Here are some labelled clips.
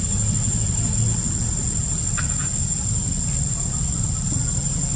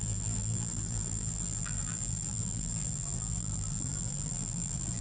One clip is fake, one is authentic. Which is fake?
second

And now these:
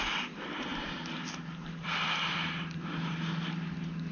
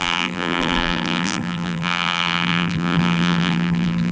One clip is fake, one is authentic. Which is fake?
second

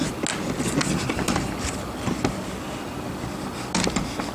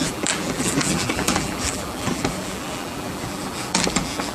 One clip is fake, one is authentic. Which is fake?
second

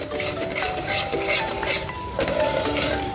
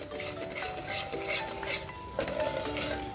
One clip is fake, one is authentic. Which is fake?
first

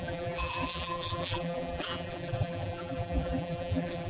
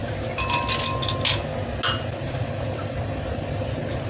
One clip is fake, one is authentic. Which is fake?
first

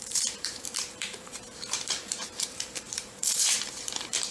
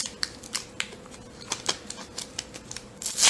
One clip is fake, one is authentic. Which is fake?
first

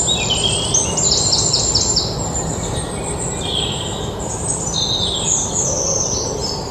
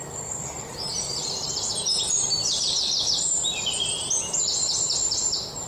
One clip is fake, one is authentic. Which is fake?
first